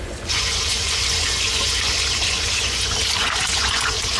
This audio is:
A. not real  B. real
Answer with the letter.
A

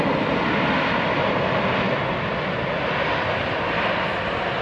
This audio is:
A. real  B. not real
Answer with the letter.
A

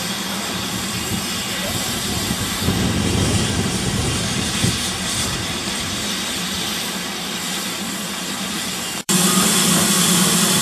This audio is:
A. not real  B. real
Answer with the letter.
A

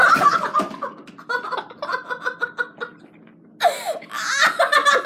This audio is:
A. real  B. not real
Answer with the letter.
A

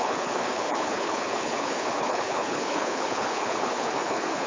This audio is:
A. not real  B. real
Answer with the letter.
A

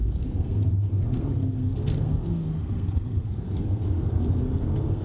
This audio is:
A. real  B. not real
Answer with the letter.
B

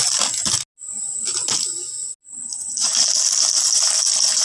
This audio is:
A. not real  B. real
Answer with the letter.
B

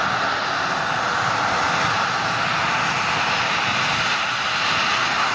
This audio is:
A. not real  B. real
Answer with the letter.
B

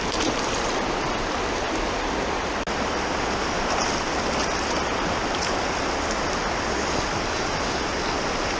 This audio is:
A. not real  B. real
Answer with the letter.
B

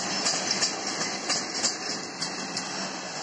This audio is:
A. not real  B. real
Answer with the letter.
B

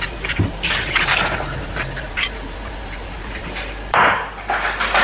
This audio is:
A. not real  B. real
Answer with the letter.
A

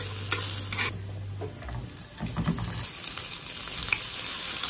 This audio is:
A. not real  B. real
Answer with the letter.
B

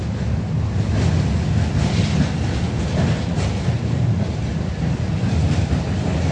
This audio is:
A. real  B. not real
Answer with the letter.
A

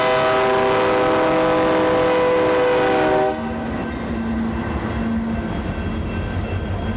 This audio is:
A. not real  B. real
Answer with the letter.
B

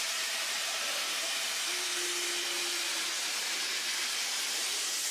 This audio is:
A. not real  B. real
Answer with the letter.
B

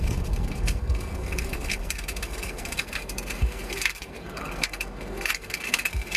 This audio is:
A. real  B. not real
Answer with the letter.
B